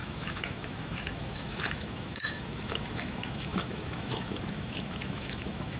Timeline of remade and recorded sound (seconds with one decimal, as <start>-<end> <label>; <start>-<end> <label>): 0.0-5.8 remade